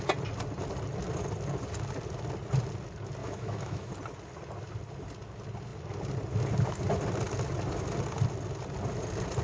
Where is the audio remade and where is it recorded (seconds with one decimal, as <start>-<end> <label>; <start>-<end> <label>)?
0.0-3.2 recorded; 3.2-3.9 remade; 3.9-9.4 recorded